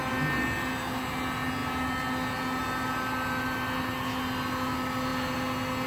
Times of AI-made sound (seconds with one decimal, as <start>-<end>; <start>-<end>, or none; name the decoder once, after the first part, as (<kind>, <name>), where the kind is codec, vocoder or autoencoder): none